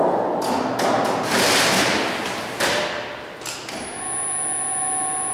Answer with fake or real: real